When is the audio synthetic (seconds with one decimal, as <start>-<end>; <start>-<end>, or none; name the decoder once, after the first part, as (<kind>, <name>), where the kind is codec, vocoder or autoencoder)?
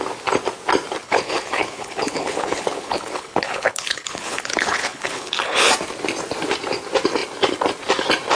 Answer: 1.0-5.7 (codec, HILCodec)